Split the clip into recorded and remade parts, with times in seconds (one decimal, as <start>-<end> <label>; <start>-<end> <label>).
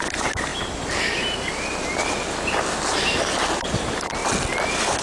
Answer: 0.0-5.0 recorded